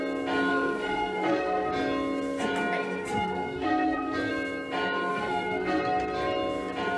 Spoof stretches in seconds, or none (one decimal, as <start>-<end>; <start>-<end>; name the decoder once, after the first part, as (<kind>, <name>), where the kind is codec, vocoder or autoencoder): 0.5-1.7 (codec, SNAC); 2.8-4.3; 5.1-5.8